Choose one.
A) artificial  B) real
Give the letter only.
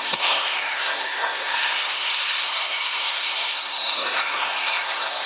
A